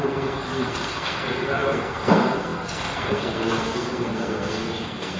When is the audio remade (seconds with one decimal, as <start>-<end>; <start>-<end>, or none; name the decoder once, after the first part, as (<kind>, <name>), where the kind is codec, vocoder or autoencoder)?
0.0-5.2 (codec, SNAC)